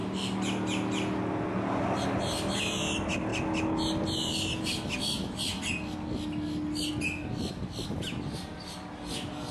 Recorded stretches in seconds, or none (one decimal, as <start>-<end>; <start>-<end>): 0.0-9.5